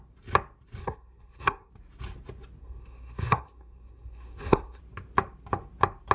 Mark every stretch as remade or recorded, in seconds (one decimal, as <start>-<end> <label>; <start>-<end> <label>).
0.0-0.8 recorded; 0.8-1.7 remade; 1.7-2.6 recorded; 2.6-4.8 remade; 4.8-6.1 recorded